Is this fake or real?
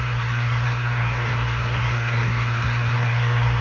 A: fake